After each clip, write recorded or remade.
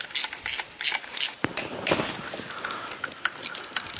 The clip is recorded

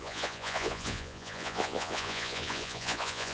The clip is remade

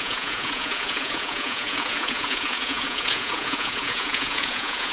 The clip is remade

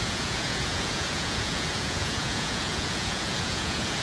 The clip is remade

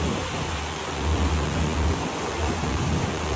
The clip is remade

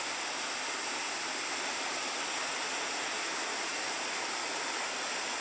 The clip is recorded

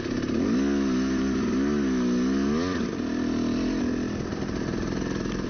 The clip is recorded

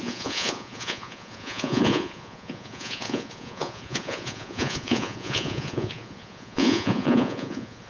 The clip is remade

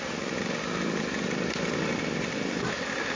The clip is recorded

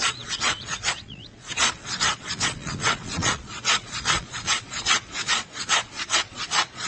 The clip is remade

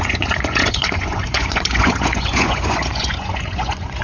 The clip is remade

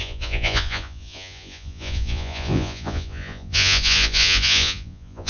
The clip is remade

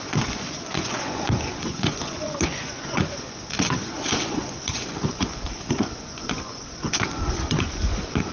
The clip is remade